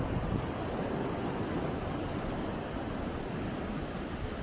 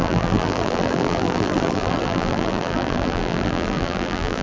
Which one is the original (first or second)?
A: first